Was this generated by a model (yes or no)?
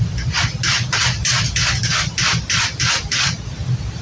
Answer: no